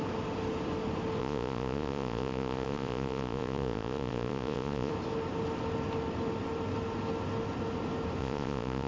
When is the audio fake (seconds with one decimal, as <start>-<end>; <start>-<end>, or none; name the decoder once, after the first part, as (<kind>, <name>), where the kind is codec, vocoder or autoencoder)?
1.2-4.9 (vocoder, Vocos); 8.2-8.9